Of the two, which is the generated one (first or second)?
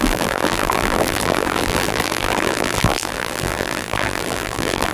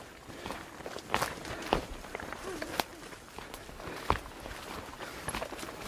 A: first